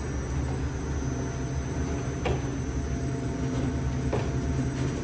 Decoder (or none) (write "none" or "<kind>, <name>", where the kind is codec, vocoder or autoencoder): none